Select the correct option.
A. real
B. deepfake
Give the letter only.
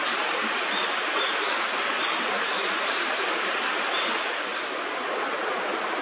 B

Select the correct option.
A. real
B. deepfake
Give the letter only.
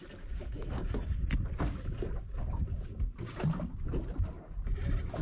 A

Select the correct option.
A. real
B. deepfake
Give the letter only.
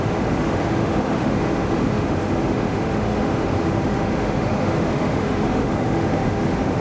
B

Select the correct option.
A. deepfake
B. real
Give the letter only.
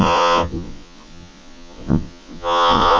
A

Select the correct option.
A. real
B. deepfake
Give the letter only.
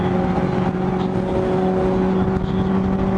A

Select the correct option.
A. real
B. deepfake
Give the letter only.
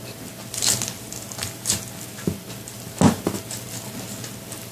A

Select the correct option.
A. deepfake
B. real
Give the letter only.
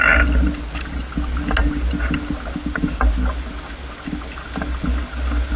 B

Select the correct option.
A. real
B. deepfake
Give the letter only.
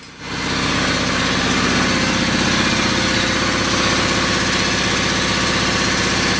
A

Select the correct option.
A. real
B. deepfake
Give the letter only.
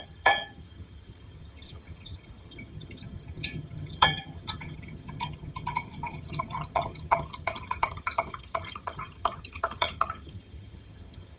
B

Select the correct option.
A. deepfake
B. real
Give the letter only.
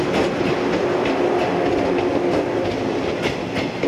B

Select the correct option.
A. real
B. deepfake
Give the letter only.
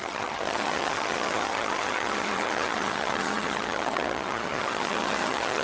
B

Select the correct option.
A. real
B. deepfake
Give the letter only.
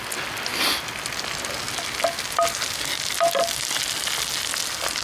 A